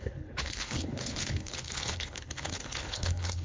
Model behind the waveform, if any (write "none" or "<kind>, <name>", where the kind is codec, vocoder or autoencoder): codec, HILCodec